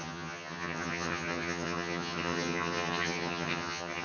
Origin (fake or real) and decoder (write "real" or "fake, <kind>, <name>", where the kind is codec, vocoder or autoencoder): fake, vocoder, HiFi-GAN